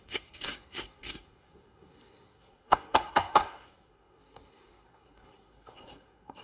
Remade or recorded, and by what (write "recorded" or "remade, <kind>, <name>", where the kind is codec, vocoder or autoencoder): remade, codec, SNAC